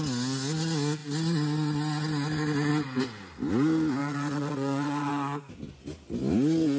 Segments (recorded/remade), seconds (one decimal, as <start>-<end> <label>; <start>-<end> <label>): 0.0-4.0 recorded; 4.0-5.1 remade; 5.1-6.8 recorded